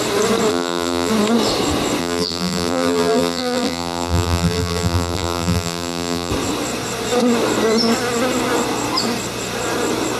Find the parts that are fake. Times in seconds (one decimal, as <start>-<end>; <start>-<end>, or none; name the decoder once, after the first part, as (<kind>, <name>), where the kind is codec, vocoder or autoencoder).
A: 0.5-1.1 (vocoder, BigVGAN v2); 2.0-6.3